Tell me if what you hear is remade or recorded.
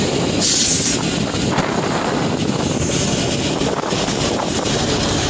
recorded